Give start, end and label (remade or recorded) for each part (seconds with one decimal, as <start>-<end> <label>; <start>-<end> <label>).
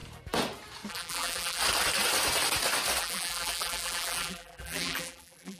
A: 0.0-0.9 recorded; 0.9-1.6 remade; 1.6-3.0 recorded; 3.0-5.6 remade